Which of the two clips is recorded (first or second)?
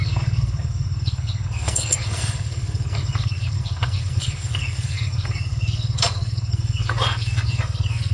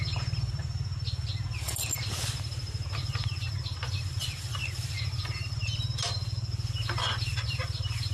second